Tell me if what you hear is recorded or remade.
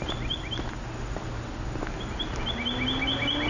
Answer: recorded